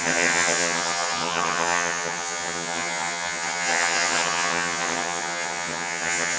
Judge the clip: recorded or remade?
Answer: remade